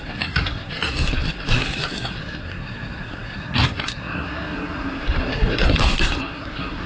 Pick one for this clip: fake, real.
fake